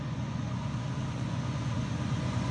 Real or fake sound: fake